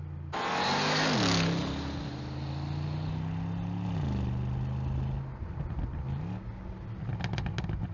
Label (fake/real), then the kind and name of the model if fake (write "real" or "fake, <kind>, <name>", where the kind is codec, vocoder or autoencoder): real